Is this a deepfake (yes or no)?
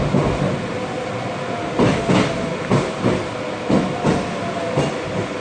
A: no